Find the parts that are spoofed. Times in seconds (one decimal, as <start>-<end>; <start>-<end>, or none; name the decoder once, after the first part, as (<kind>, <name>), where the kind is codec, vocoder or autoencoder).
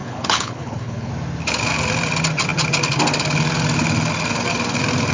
0.0-1.1 (codec, HILCodec)